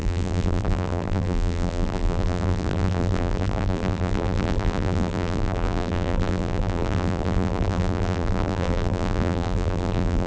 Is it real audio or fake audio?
fake